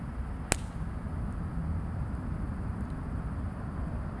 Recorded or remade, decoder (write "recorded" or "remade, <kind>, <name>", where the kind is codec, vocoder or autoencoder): recorded